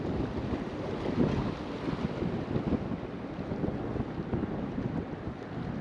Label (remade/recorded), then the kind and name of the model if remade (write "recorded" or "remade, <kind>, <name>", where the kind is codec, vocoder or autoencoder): recorded